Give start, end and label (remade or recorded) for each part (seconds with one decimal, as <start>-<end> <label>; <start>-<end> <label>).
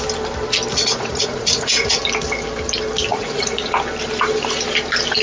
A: 0.0-0.7 recorded; 0.7-2.0 remade; 2.0-3.1 recorded; 3.1-3.7 remade; 3.7-5.2 recorded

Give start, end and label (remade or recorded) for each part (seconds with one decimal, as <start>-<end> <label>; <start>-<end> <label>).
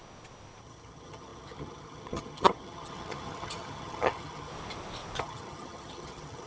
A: 0.0-0.6 recorded; 0.6-4.5 remade; 4.5-5.2 recorded; 5.2-6.5 remade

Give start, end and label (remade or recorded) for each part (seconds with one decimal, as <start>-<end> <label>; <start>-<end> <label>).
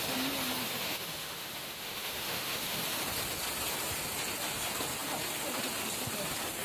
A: 0.0-0.6 recorded; 0.6-2.8 remade; 2.8-6.6 recorded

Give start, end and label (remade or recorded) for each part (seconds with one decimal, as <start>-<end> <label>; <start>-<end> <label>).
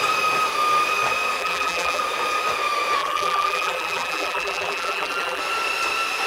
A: 0.0-1.4 recorded; 1.4-2.0 remade; 2.0-3.0 recorded; 3.0-5.4 remade; 5.4-6.3 recorded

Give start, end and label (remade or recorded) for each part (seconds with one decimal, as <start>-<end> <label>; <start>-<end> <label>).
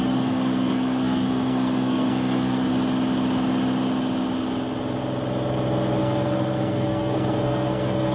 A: 0.0-2.7 remade; 2.7-6.0 recorded; 6.0-8.1 remade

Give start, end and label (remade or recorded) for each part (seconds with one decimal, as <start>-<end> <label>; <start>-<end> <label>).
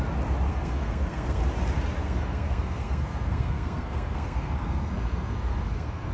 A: 0.0-0.5 recorded; 0.5-1.4 remade; 1.4-2.0 recorded; 2.0-6.1 remade